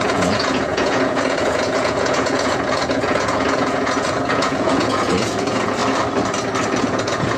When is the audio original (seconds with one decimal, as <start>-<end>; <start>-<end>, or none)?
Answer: 5.8-6.8